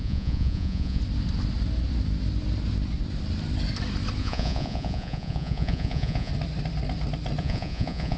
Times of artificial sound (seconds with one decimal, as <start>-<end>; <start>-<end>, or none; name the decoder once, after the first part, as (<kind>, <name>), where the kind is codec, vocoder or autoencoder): 0.0-1.0 (vocoder, Vocos); 4.2-6.3; 7.4-8.2